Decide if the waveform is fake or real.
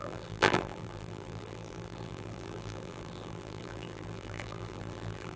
fake